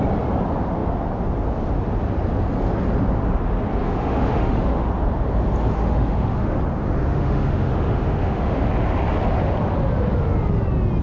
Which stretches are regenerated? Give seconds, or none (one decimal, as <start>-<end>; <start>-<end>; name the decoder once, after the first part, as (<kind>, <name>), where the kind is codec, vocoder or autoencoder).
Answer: 3.8-4.9 (autoencoder, DAC-VAE); 5.7-6.6; 7.0-8.7